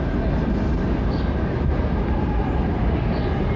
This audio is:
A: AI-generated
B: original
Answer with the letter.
B